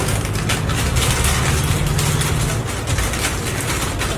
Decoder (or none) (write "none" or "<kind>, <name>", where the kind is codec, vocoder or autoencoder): none